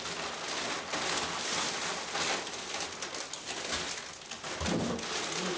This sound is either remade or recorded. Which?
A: recorded